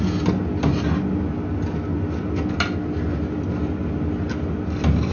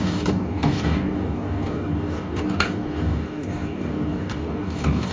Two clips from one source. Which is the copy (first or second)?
second